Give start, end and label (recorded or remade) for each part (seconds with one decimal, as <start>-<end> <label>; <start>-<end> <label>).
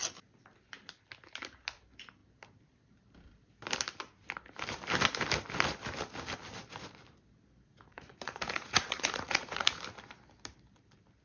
0.0-7.9 recorded; 7.9-9.8 remade; 9.8-11.2 recorded